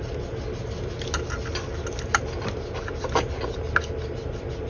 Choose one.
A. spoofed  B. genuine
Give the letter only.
B